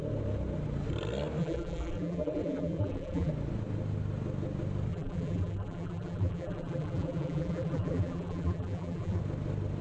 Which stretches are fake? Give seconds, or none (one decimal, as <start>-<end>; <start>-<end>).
1.4-3.3; 4.9-9.2